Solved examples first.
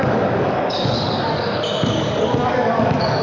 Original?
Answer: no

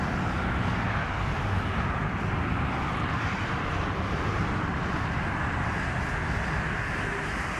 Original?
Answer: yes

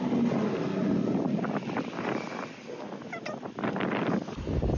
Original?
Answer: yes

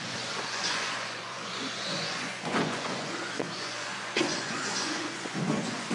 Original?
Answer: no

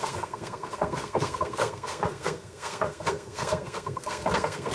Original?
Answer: no